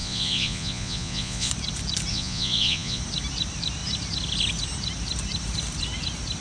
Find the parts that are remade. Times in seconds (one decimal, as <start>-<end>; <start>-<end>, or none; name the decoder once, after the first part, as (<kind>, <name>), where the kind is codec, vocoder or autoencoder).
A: 0.0-1.5 (vocoder, Vocos); 2.1-3.0